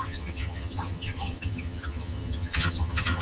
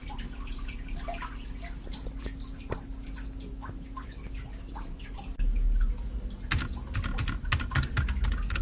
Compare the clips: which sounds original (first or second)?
second